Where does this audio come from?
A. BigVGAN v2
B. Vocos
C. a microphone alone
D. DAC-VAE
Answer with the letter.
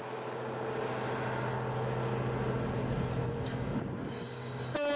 C